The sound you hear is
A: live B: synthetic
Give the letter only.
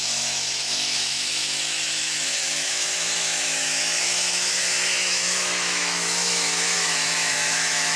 B